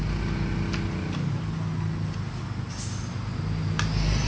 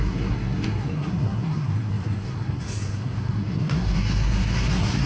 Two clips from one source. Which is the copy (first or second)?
second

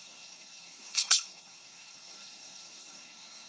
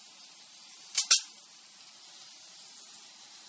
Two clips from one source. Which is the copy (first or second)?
first